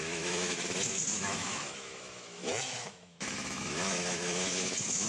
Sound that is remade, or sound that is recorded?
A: remade